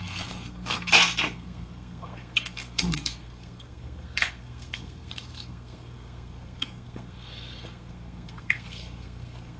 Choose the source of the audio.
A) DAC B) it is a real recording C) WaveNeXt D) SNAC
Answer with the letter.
D